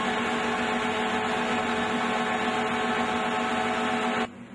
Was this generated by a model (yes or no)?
no